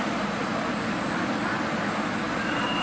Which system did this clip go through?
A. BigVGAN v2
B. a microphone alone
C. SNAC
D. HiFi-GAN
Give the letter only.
B